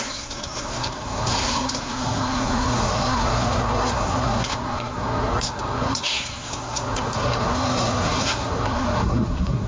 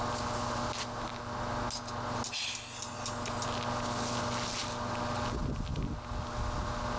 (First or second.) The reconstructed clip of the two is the first